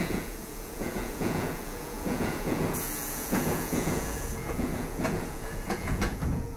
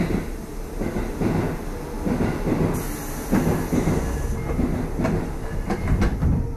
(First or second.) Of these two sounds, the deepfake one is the first